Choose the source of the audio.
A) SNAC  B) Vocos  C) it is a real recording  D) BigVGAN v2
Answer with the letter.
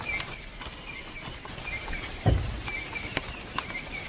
C